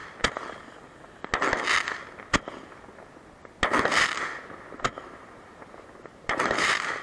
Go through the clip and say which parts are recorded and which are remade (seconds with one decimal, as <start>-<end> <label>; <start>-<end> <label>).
0.0-4.2 recorded; 4.2-7.0 remade